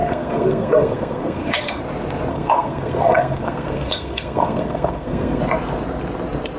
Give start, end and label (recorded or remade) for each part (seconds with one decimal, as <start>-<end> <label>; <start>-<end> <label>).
0.0-1.8 remade; 1.8-2.3 recorded; 2.3-5.4 remade; 5.4-6.6 recorded